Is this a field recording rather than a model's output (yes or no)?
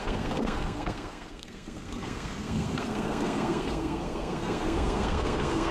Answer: no